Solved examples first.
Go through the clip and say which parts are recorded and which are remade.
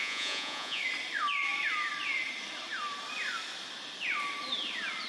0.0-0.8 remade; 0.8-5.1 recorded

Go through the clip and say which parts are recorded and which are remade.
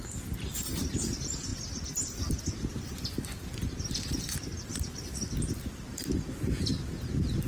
0.0-7.5 recorded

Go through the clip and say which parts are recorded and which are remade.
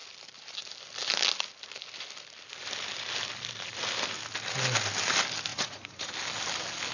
0.0-5.5 recorded; 5.5-6.1 remade; 6.1-6.9 recorded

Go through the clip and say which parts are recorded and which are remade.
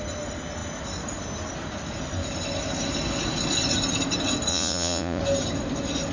0.0-4.5 recorded; 4.5-5.2 remade; 5.2-6.1 recorded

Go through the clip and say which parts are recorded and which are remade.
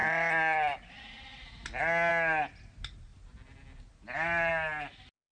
0.0-5.3 recorded